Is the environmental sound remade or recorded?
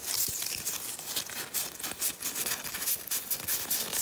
recorded